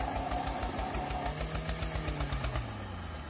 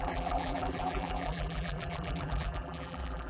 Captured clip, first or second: first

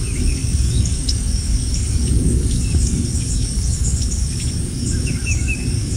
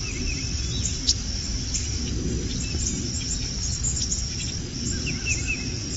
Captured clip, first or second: second